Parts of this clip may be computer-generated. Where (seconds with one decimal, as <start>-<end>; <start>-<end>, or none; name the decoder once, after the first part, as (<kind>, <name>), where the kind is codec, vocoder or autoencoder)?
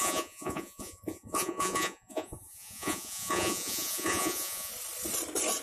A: 0.0-4.7 (vocoder, Vocos)